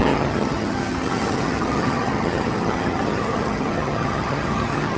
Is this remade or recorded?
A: remade